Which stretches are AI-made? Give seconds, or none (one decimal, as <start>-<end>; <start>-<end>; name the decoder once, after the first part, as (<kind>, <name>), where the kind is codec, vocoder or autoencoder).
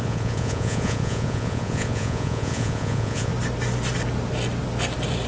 0.0-3.3 (vocoder, Vocos)